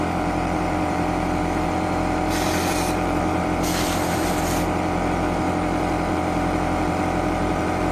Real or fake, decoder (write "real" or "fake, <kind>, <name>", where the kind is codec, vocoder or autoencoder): fake, vocoder, BigVGAN v2